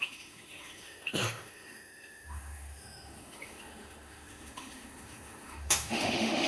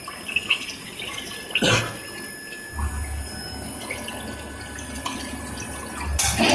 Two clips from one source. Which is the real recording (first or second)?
second